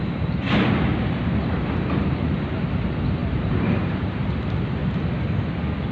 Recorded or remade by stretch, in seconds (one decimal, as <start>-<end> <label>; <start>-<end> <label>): 0.0-0.9 remade; 0.9-2.0 recorded; 2.0-4.8 remade; 4.8-5.9 recorded